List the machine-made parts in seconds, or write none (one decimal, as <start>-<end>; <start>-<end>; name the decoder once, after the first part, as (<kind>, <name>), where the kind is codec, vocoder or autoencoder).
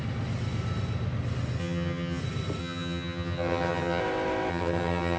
1.6-2.2 (vocoder, HiFi-GAN); 2.6-4.0; 4.5-5.2